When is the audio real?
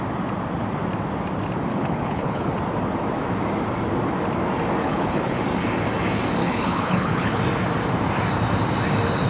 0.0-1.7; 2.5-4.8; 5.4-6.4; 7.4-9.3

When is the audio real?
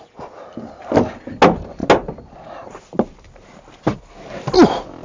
0.0-5.0